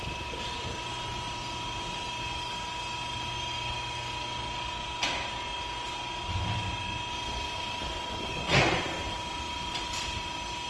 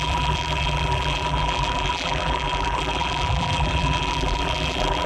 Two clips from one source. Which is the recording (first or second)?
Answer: first